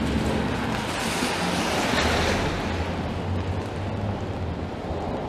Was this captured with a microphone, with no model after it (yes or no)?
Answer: yes